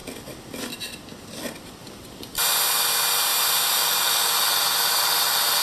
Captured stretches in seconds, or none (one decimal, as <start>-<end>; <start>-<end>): 0.0-1.8; 2.6-3.3